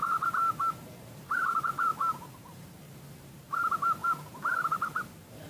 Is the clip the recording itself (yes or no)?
no